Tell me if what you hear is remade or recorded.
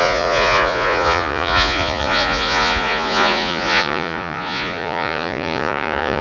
remade